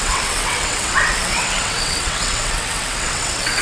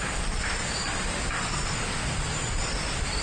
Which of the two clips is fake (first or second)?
first